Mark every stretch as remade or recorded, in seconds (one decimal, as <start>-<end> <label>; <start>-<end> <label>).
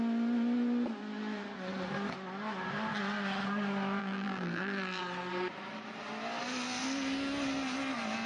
0.0-4.0 recorded; 4.0-5.0 remade; 5.0-8.3 recorded